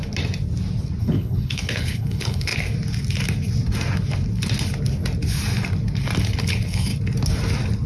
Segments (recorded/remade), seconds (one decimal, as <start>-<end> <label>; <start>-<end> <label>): 0.0-1.0 recorded; 1.0-2.5 remade; 2.5-6.4 recorded; 6.4-6.9 remade; 6.9-7.9 recorded